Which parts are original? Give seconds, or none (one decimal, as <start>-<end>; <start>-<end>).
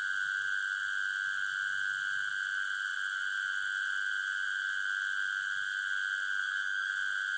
0.0-6.4; 6.9-7.4